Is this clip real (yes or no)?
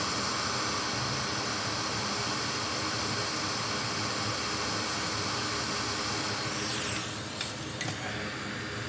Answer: yes